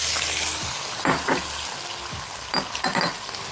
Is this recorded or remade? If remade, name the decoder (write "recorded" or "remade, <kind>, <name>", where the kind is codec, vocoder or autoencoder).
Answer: recorded